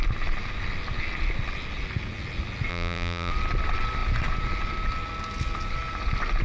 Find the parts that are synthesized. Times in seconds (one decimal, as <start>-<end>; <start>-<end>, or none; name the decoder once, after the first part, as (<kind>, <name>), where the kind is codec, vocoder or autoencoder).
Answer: 2.7-3.3 (vocoder, BigVGAN v2)